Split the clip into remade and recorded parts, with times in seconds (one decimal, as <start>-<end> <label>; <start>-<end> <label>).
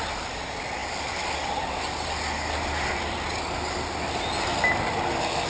0.0-5.5 recorded